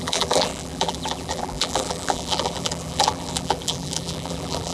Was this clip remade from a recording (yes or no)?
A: yes